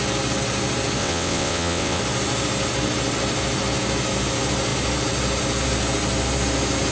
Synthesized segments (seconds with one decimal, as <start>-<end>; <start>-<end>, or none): 1.0-2.0